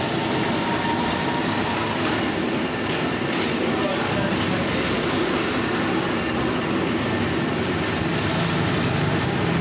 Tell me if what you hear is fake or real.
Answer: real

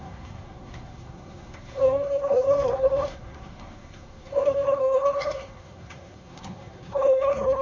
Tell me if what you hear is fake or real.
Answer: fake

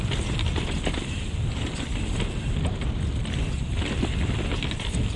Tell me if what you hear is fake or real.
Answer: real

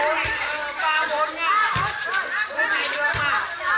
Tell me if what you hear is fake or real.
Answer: real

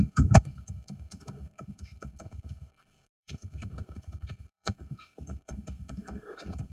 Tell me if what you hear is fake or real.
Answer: fake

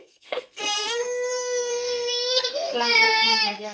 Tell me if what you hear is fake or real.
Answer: fake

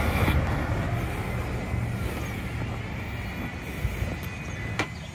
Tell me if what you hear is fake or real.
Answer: real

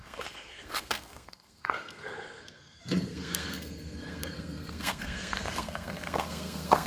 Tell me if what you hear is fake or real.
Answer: fake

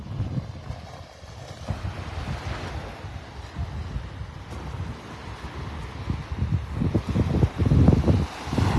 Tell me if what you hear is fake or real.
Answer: real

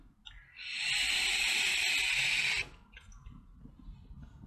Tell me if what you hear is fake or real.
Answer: real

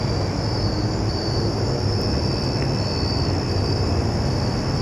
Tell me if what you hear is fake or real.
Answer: real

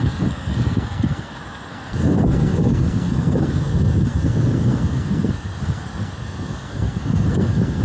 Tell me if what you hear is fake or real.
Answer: fake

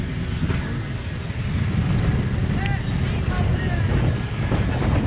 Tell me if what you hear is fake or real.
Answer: real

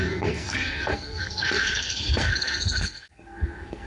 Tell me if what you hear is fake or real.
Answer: fake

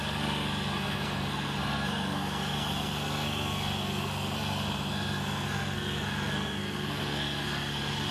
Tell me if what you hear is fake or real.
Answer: fake